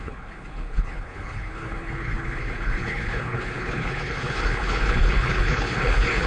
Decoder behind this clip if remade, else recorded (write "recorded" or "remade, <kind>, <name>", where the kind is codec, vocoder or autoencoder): remade, codec, HILCodec